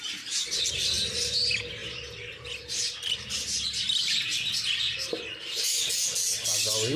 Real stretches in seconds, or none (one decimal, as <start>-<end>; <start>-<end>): 0.0-7.0